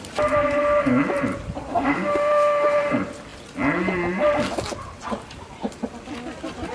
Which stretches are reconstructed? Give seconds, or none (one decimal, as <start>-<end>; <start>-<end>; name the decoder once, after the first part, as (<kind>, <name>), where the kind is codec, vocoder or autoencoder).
1.7-2.9 (autoencoder, DAC-VAE)